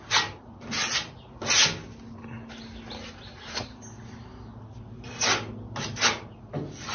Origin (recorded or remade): recorded